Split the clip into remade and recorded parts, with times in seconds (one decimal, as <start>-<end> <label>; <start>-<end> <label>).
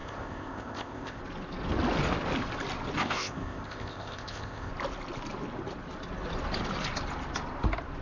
0.0-1.2 remade; 1.2-3.0 recorded; 3.0-4.7 remade; 4.7-8.0 recorded